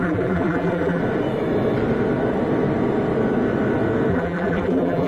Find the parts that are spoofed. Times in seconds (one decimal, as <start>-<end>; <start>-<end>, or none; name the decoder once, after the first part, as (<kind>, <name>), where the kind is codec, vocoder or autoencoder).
0.0-1.0 (vocoder, BigVGAN v2); 4.1-5.1